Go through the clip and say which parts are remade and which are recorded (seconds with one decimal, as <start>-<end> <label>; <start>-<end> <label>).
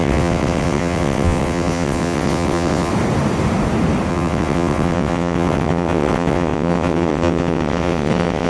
0.0-2.9 remade; 2.9-4.1 recorded; 4.1-8.5 remade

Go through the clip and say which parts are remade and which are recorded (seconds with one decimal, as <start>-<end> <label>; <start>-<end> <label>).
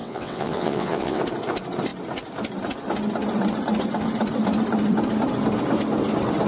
0.0-1.2 remade; 1.2-6.5 recorded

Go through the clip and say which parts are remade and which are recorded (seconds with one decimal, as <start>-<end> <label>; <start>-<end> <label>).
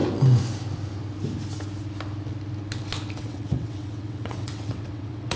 0.0-3.2 recorded; 3.2-5.4 remade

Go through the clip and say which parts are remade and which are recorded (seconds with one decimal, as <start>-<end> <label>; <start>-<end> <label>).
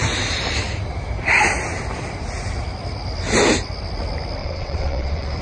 0.0-4.4 recorded; 4.4-5.4 remade